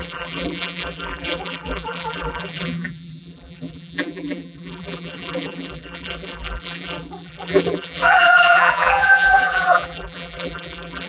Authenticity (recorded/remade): remade